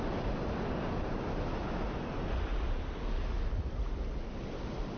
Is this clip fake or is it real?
real